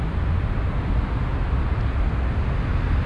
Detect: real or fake real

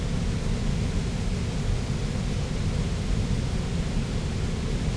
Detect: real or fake real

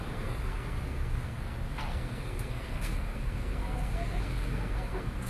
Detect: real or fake fake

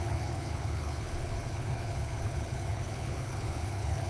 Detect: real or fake fake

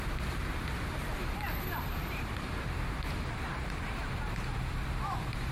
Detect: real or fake fake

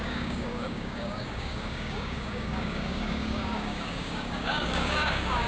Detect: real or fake fake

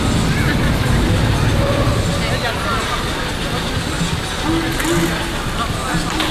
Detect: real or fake real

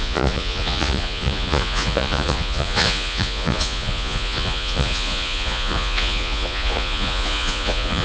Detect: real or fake fake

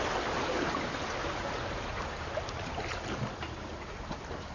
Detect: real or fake real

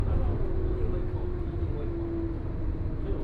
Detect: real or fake real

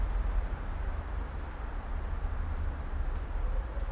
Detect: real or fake real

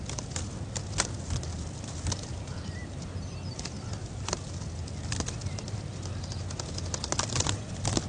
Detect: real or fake real